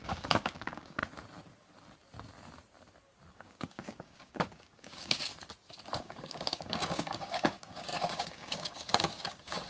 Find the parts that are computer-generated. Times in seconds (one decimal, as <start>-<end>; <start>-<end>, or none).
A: 0.0-1.0; 3.3-5.3; 6.0-9.7

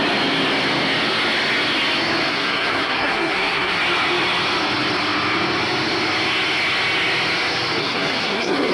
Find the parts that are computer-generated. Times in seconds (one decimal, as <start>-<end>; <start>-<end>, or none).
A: 2.3-3.8; 7.8-8.7

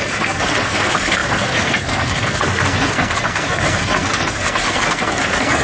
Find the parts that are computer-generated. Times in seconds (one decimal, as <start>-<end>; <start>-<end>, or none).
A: 0.0-5.6

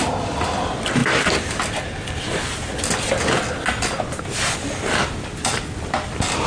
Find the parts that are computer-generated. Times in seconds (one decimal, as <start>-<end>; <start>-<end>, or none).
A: none

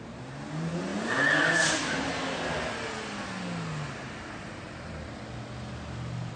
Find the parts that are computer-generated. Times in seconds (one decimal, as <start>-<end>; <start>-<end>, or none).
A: none